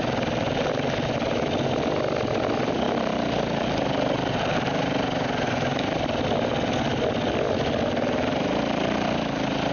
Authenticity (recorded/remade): recorded